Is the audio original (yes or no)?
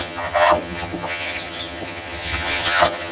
no